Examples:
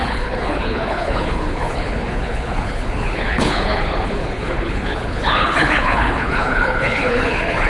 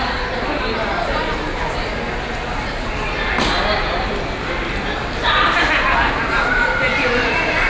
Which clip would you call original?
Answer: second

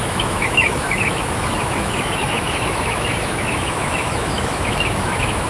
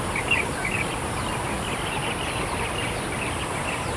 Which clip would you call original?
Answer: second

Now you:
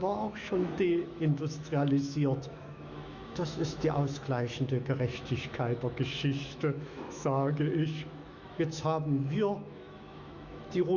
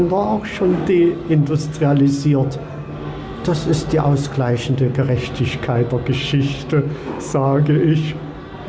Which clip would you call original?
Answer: second